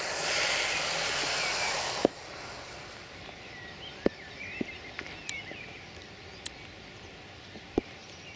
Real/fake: real